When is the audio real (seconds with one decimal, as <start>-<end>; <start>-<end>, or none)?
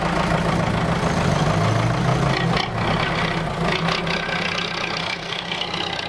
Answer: 0.0-5.0; 5.6-6.1